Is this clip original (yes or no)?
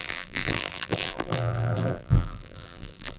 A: no